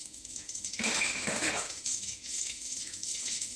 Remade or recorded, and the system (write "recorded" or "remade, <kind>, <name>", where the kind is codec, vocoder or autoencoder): remade, autoencoder, DAC-VAE